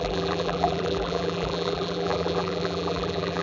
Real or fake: fake